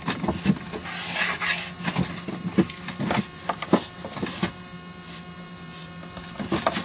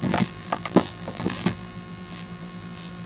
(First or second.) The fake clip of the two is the second